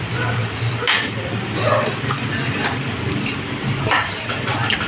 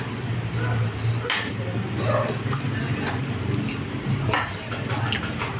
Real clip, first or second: second